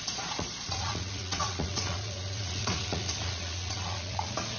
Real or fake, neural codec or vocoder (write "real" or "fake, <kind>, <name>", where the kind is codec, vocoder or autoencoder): fake, vocoder, Vocos